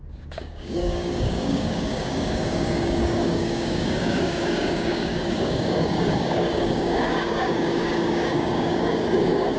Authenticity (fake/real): fake